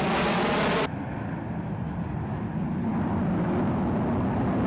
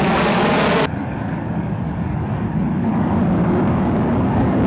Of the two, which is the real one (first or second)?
first